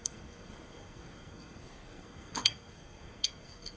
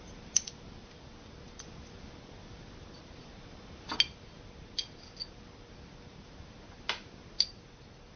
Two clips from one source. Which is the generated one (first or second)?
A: first